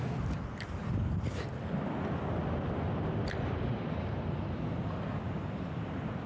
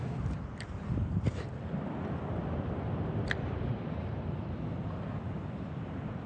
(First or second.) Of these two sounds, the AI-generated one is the second